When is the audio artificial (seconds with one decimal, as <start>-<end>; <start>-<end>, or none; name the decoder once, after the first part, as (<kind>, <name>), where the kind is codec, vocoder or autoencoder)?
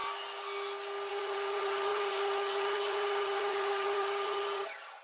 1.1-5.0 (vocoder, HiFi-GAN)